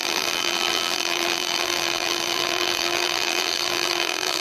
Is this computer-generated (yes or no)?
yes